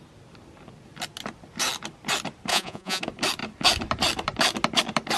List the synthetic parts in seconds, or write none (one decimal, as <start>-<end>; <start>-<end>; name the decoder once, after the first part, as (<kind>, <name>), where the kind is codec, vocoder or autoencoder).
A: 2.5-3.0 (vocoder, Vocos)